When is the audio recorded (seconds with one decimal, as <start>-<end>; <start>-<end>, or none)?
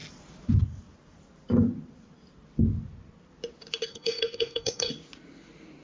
0.0-3.9; 4.9-5.8